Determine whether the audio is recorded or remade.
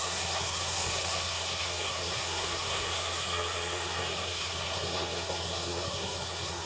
remade